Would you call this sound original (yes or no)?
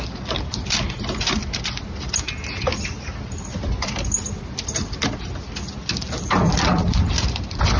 yes